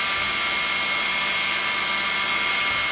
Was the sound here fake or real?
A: real